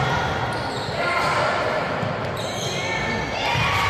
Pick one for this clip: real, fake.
real